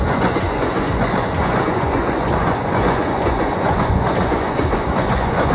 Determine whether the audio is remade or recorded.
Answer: remade